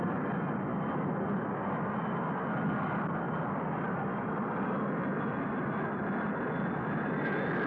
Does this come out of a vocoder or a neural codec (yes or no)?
no